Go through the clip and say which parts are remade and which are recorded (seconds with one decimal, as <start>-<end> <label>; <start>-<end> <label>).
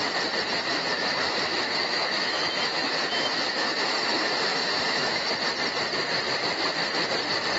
0.0-0.7 recorded; 0.7-5.3 remade; 5.3-7.6 recorded